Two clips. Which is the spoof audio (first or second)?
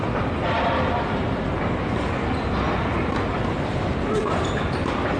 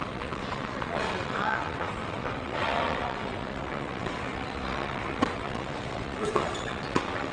second